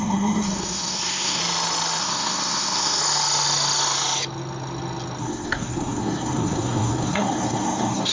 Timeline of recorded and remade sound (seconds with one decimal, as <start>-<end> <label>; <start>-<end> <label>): 0.0-1.4 remade; 1.4-2.0 recorded; 2.0-3.0 remade; 3.0-5.2 recorded; 5.2-8.1 remade

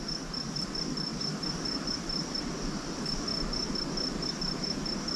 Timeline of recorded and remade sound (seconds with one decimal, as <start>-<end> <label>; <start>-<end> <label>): 0.0-5.2 recorded

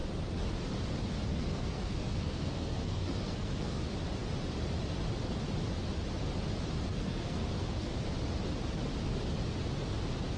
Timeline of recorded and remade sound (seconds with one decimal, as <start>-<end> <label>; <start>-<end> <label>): 0.0-1.3 recorded; 1.3-3.8 remade; 3.8-6.9 recorded; 6.9-8.0 remade; 8.0-10.4 recorded

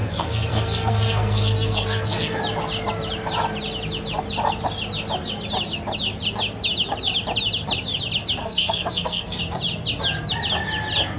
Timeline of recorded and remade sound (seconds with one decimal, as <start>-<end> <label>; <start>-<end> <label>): 0.0-2.4 remade; 2.4-8.4 recorded; 8.4-9.4 remade; 9.4-11.2 recorded

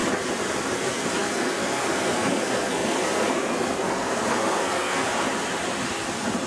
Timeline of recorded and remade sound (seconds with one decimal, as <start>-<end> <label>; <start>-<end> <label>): 0.0-0.7 recorded; 0.7-5.0 remade; 5.0-6.5 recorded